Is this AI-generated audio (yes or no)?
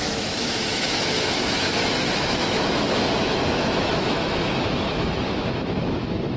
yes